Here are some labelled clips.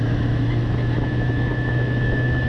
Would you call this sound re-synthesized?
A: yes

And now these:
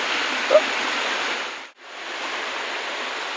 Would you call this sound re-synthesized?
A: no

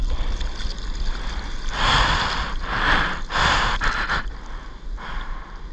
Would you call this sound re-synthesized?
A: no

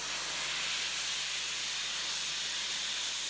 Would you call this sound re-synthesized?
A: no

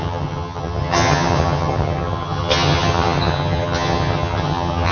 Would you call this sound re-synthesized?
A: yes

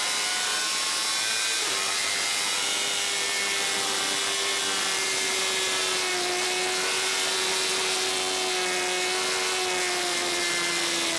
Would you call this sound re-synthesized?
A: no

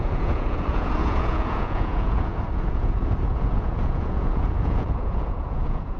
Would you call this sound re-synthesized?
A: yes